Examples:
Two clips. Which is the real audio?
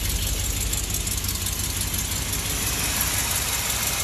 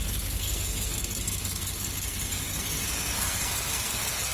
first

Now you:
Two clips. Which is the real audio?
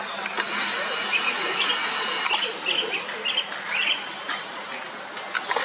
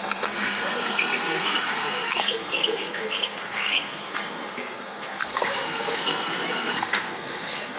first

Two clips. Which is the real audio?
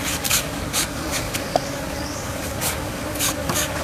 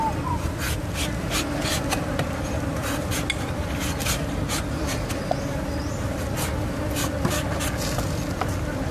second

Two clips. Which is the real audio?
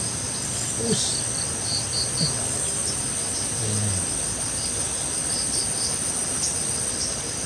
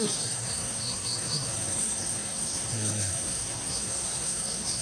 first